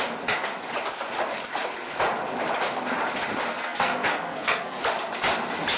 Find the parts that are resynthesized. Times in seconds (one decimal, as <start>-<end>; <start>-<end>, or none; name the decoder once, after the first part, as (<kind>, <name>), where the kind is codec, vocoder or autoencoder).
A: 3.5-4.8 (codec, SNAC)